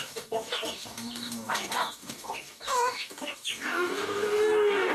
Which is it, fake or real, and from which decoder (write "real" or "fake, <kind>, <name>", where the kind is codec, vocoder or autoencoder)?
fake, codec, DAC